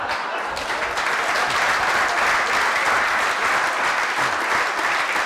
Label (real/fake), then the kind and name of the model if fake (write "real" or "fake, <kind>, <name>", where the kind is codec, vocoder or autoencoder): real